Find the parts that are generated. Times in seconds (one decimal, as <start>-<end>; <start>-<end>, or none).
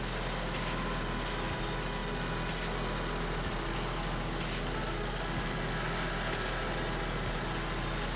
none